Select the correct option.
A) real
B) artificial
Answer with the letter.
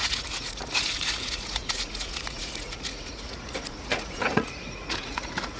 B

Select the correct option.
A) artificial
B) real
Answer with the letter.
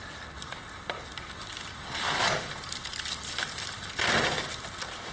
B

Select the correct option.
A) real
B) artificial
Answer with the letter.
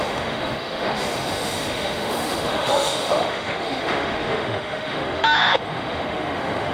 B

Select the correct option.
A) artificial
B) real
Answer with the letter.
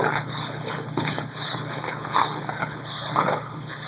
A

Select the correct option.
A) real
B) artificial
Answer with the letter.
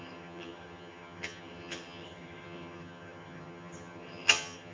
B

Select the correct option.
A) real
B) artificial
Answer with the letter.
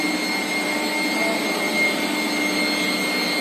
A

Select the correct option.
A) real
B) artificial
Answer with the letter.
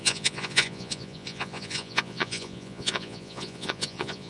B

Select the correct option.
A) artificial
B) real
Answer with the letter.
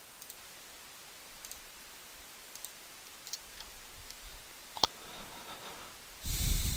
A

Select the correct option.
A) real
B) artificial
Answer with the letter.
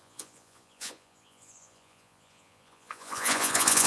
B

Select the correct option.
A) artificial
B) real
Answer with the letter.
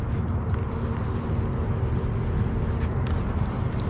B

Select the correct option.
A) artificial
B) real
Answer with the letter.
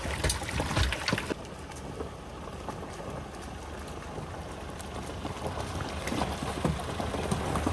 B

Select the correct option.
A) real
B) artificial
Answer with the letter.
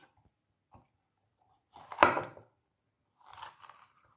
A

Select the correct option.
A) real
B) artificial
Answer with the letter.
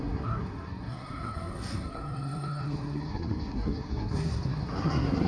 B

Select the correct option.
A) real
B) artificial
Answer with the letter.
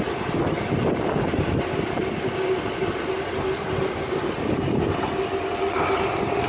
A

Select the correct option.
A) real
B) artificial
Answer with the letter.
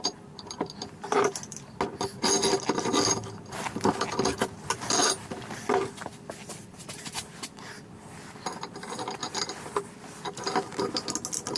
A